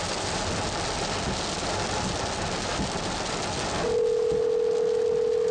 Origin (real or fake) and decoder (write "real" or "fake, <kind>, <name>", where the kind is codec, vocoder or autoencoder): real